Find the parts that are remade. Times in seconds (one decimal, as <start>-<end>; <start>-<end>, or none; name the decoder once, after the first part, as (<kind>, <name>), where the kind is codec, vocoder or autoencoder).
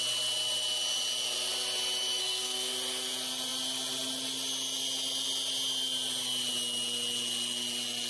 2.2-2.7 (codec, SNAC)